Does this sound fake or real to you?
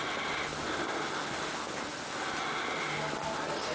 real